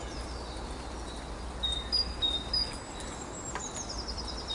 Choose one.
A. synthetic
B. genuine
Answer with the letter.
B